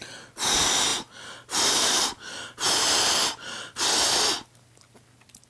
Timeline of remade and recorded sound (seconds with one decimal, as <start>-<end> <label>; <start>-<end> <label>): 0.0-5.5 recorded